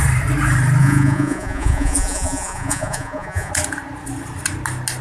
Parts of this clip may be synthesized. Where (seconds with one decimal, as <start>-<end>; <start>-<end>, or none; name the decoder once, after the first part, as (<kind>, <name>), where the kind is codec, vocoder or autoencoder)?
0.8-3.5 (vocoder, Vocos)